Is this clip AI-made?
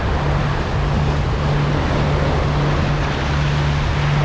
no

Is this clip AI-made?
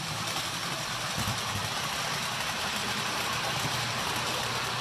yes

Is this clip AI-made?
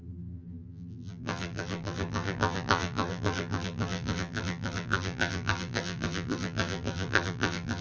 yes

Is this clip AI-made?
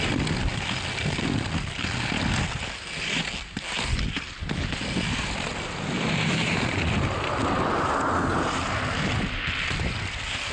no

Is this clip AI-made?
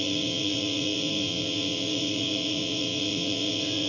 yes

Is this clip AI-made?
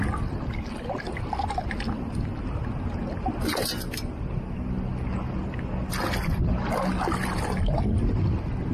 no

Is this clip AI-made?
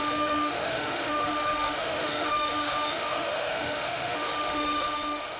yes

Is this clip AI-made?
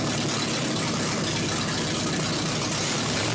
no